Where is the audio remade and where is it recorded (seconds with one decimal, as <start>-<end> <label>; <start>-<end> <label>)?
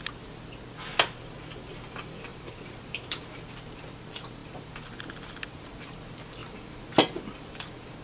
0.0-2.3 recorded; 2.3-3.4 remade; 3.4-4.4 recorded; 4.4-5.0 remade; 5.0-5.5 recorded; 5.5-6.0 remade; 6.0-6.4 recorded; 6.4-8.0 remade